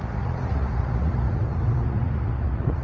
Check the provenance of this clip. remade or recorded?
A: remade